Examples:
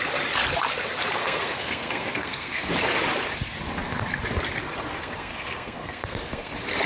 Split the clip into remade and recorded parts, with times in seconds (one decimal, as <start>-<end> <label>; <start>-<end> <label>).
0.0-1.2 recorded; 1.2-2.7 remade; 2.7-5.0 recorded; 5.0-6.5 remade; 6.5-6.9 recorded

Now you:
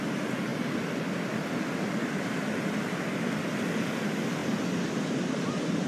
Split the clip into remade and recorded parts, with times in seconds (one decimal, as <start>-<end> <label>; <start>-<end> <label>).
0.0-5.9 recorded

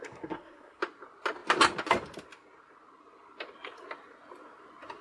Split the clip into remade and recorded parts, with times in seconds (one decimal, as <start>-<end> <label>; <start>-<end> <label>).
0.0-0.8 remade; 0.8-5.0 recorded

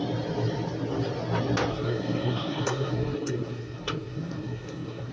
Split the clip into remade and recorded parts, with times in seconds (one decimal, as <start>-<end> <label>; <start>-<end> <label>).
0.0-1.7 recorded; 1.7-5.1 remade

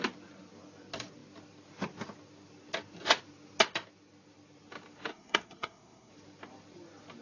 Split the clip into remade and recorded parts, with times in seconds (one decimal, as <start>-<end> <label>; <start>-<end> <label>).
0.0-5.1 recorded; 5.1-6.1 remade; 6.1-7.2 recorded

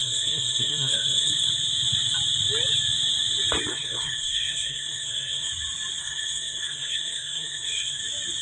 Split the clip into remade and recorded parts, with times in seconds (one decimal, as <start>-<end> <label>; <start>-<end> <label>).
0.0-1.3 remade; 1.3-3.7 recorded; 3.7-5.5 remade; 5.5-6.0 recorded; 6.0-8.0 remade; 8.0-8.4 recorded